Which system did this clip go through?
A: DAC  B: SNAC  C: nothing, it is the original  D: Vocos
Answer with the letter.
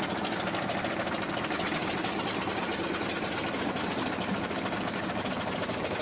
C